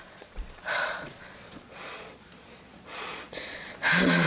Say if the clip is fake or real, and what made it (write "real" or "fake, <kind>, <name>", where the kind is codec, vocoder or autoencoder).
fake, vocoder, Vocos